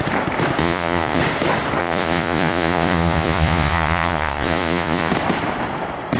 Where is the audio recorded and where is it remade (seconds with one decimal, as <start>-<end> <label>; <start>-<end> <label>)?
0.0-0.6 recorded; 0.6-1.2 remade; 1.2-1.8 recorded; 1.8-5.1 remade; 5.1-6.2 recorded